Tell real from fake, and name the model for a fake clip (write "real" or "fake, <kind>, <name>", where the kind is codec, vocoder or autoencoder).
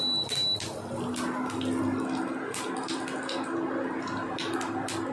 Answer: real